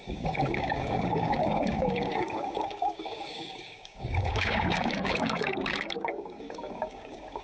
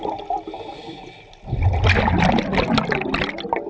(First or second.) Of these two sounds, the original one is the second